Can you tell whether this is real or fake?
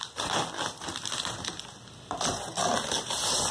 real